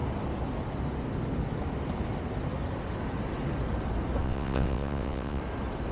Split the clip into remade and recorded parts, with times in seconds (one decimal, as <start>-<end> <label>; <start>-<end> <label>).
0.0-4.2 recorded; 4.2-5.4 remade; 5.4-5.9 recorded